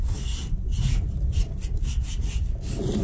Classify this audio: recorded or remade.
recorded